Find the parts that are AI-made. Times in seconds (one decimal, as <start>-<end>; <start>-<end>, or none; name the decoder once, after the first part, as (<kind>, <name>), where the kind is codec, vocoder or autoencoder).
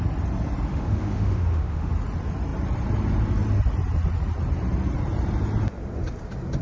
0.7-1.9 (autoencoder, DAC-VAE)